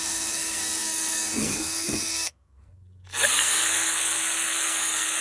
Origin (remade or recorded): remade